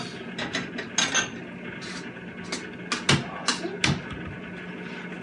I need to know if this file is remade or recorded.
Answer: recorded